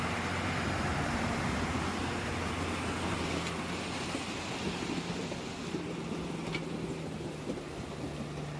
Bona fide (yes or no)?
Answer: yes